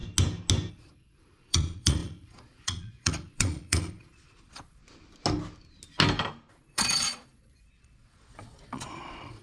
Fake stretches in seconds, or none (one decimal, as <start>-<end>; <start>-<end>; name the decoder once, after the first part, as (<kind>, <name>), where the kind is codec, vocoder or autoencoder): 0.7-4.8 (vocoder, Vocos); 6.5-9.4